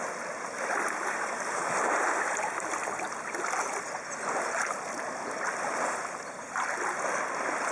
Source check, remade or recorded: recorded